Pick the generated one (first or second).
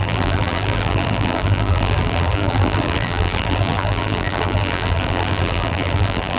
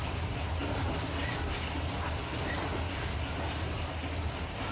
first